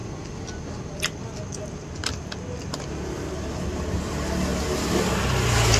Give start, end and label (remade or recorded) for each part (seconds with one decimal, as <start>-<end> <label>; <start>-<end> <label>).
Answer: 0.0-5.8 recorded